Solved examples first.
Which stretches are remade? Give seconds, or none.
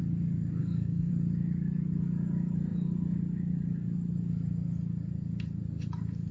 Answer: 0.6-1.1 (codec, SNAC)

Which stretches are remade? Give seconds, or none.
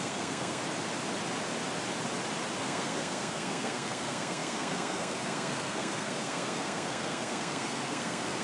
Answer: 0.0-0.6 (codec, SNAC); 2.6-8.4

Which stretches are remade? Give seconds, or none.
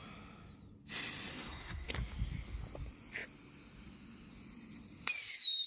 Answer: 1.3-1.9 (codec, SNAC)